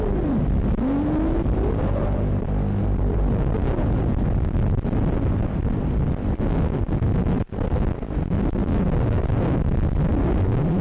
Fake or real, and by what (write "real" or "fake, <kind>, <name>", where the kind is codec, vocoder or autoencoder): real